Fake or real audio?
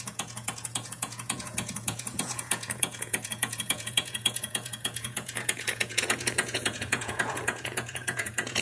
fake